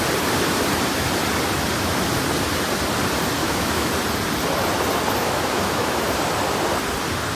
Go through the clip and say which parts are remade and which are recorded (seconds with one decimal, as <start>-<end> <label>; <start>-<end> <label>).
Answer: 0.0-3.4 recorded; 3.4-3.9 remade; 3.9-5.2 recorded; 5.2-6.0 remade; 6.0-7.3 recorded